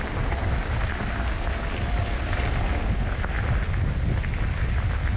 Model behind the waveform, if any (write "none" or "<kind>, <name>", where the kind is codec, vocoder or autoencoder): none